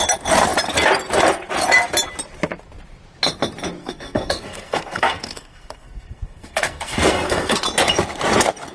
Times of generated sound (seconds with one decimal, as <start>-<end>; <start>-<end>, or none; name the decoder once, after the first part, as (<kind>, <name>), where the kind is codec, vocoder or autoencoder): 3.8-7.6 (codec, SNAC)